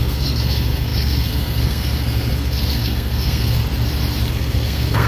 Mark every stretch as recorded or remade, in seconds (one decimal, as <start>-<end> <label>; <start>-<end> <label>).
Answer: 0.0-3.6 remade; 3.6-4.3 recorded; 4.3-5.1 remade